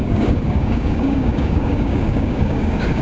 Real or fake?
fake